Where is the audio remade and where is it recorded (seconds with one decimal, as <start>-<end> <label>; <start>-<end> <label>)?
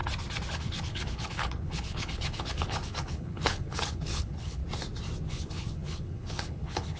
0.0-0.5 recorded; 0.5-4.6 remade; 4.6-5.3 recorded; 5.3-7.0 remade